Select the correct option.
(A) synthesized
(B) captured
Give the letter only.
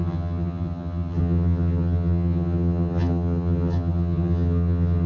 A